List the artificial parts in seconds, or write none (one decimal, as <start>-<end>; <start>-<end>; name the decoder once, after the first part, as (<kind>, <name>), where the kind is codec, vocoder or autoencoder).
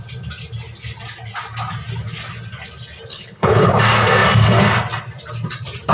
3.1-3.7 (codec, HILCodec)